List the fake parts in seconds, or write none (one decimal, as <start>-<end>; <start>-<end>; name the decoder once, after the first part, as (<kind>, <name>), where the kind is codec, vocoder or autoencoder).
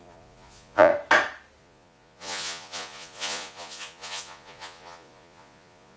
0.0-0.9 (vocoder, Vocos); 1.6-6.0